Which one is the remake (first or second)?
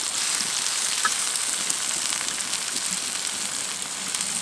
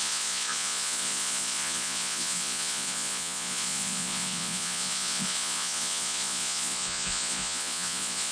second